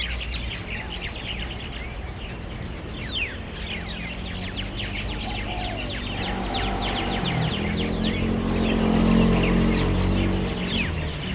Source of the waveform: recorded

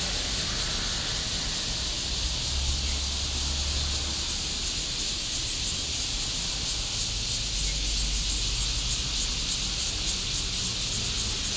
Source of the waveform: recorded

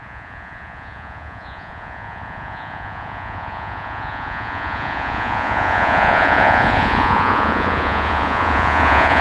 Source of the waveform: remade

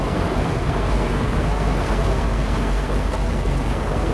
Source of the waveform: remade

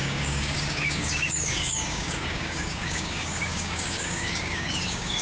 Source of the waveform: remade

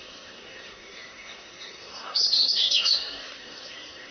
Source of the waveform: remade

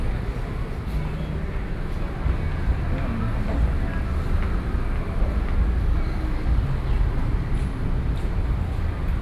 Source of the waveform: recorded